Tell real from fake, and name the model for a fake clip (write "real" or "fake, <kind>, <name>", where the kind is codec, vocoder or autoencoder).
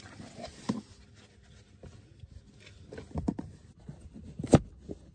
real